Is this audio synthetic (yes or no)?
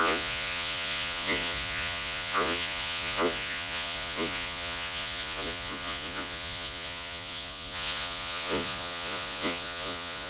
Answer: yes